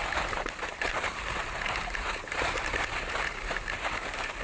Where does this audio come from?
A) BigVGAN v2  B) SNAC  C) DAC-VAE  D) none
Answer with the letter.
A